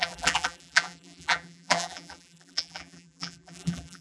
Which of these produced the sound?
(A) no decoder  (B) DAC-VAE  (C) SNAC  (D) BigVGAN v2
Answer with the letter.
D